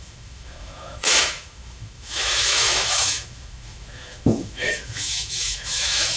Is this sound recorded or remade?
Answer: remade